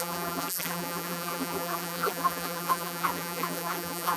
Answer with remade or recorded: remade